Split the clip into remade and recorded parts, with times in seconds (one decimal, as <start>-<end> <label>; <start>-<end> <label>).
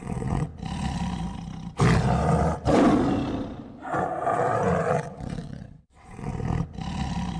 0.0-0.5 remade; 0.5-4.9 recorded; 4.9-6.3 remade; 6.3-7.4 recorded